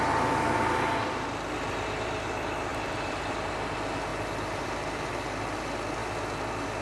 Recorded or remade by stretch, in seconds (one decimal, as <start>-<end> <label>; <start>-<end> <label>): 0.0-2.7 recorded; 2.7-3.5 remade; 3.5-4.1 recorded; 4.1-5.1 remade; 5.1-6.8 recorded